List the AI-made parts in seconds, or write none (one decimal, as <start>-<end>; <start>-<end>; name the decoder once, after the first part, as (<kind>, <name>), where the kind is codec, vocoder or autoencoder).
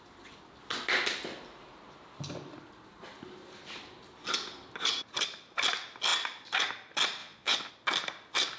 7.2-7.7 (vocoder, Vocos)